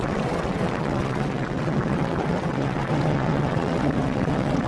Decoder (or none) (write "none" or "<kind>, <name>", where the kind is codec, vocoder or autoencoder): vocoder, WaveNeXt